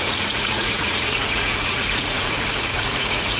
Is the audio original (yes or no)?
no